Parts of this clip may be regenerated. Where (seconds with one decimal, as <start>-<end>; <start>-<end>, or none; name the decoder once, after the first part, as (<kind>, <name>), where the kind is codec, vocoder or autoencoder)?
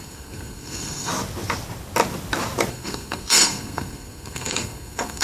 0.0-1.1 (codec, SNAC); 2.7-5.2